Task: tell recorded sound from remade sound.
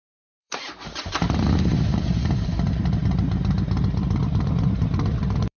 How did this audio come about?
remade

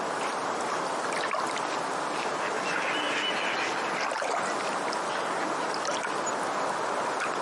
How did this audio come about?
recorded